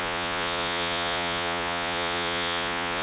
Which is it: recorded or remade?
remade